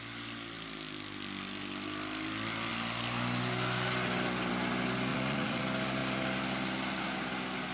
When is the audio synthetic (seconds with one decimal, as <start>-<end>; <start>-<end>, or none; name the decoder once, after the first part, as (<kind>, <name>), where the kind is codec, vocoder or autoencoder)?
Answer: 5.1-5.6 (vocoder, Vocos)

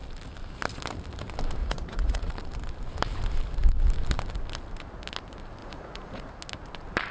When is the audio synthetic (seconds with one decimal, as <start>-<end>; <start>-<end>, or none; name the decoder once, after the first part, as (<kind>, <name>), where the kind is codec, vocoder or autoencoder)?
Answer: 1.6-2.3 (vocoder, Vocos); 5.6-6.3